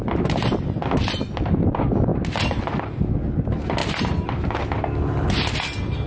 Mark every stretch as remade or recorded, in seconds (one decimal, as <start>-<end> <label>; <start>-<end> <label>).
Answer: 0.0-6.1 recorded